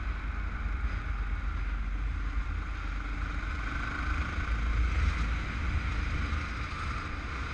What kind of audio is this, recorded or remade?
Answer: recorded